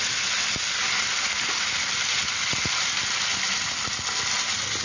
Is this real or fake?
real